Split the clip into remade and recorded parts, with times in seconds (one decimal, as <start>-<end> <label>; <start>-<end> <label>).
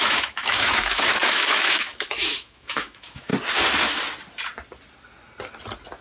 0.0-3.3 remade; 3.3-6.0 recorded